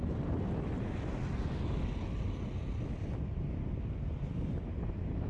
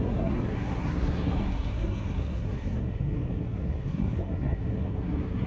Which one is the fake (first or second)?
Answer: second